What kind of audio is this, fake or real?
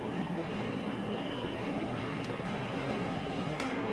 fake